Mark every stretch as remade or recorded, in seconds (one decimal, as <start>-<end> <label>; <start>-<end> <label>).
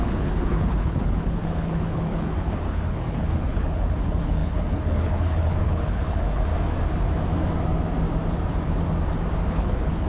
0.0-6.5 remade; 6.5-9.5 recorded; 9.5-10.1 remade